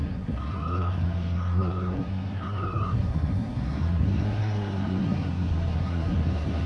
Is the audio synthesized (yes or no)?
yes